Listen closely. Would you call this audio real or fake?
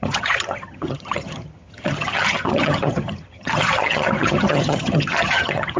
fake